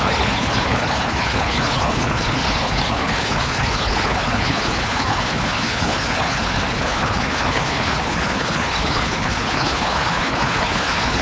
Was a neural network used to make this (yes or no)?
yes